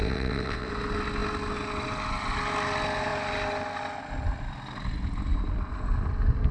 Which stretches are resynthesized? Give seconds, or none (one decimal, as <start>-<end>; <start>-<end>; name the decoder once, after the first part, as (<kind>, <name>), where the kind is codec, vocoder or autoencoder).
0.0-0.7 (vocoder, WaveNeXt)